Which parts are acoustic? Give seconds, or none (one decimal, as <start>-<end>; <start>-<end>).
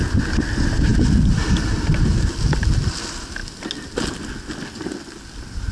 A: 0.0-5.7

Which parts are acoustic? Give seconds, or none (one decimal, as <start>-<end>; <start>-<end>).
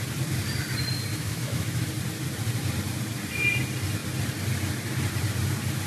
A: 0.0-1.1; 1.9-5.9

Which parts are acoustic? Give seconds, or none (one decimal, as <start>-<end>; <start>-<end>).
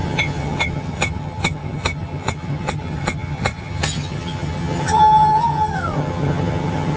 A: none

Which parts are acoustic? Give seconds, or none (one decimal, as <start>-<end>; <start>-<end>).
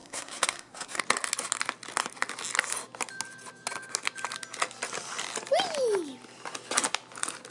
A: 1.0-7.5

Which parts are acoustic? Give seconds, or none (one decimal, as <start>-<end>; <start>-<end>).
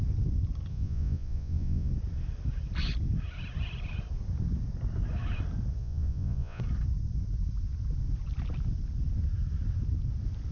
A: 0.0-0.7; 1.9-5.8; 6.6-10.5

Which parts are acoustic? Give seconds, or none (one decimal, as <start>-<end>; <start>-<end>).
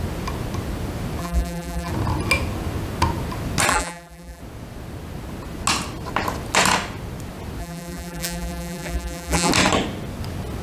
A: 0.0-1.2; 1.9-3.7; 4.4-7.6; 9.5-10.6